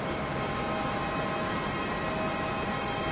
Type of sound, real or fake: real